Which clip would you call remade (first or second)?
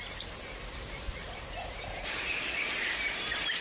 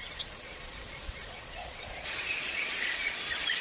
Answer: second